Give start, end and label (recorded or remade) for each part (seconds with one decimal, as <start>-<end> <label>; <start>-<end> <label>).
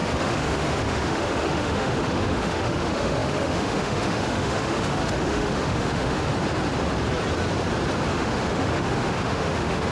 0.0-6.3 remade; 6.3-8.1 recorded; 8.1-9.9 remade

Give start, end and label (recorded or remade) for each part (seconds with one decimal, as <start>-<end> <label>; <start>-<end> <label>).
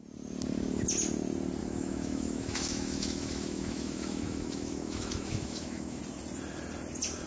0.0-1.6 recorded; 1.6-6.0 remade; 6.0-7.3 recorded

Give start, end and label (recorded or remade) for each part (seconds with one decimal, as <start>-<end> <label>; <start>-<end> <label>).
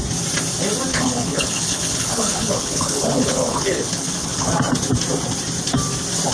0.0-0.9 recorded; 0.9-4.5 remade; 4.5-6.3 recorded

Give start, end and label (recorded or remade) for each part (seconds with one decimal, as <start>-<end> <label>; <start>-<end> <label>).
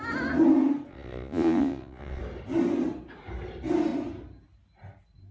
0.0-0.9 recorded; 0.9-2.2 remade; 2.2-5.3 recorded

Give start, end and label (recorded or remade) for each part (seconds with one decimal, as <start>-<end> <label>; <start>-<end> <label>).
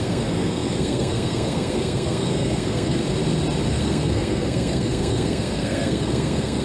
0.0-3.0 remade; 3.0-3.7 recorded; 3.7-6.6 remade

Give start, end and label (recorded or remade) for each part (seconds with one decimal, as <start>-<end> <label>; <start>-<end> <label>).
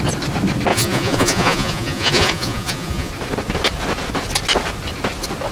0.0-0.7 recorded; 0.7-3.1 remade; 3.1-5.5 recorded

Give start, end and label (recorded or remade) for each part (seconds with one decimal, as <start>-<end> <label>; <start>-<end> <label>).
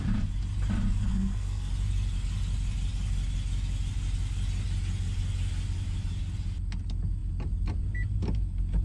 0.0-1.1 recorded; 1.1-1.7 remade; 1.7-8.8 recorded